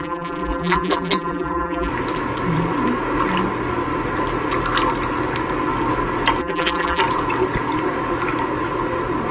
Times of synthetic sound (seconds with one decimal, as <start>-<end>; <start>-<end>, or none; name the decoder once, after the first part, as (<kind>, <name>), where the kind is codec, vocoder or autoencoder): 0.0-1.9 (vocoder, BigVGAN v2); 6.4-7.0